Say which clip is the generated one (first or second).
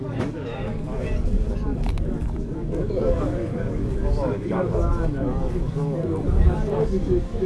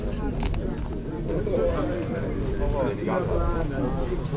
first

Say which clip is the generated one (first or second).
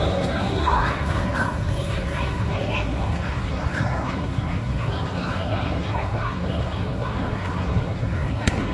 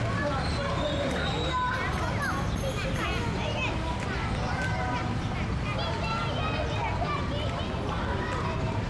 first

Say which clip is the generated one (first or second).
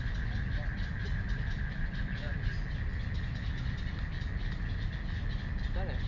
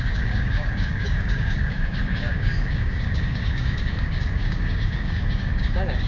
second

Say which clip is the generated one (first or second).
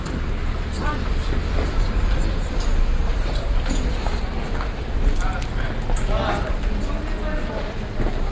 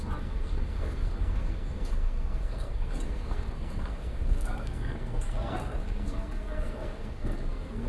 second